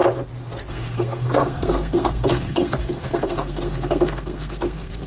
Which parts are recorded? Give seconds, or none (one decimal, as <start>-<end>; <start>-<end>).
0.0-0.7